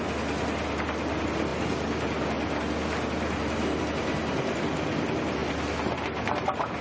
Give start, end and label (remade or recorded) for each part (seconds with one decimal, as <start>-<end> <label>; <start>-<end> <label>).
0.0-6.8 recorded

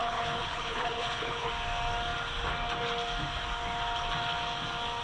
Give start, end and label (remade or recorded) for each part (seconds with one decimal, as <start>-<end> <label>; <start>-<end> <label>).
0.0-1.5 remade; 1.5-5.0 recorded

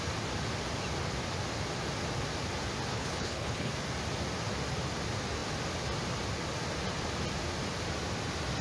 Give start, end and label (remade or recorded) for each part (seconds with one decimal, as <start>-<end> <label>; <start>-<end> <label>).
0.0-2.9 recorded; 2.9-3.7 remade; 3.7-8.6 recorded

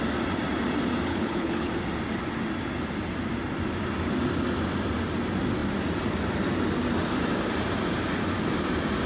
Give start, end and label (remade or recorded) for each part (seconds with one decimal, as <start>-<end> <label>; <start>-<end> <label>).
0.0-1.1 recorded; 1.1-1.7 remade; 1.7-9.1 recorded

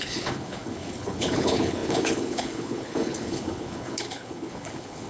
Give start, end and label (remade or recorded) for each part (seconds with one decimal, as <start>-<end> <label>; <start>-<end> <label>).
0.0-5.1 remade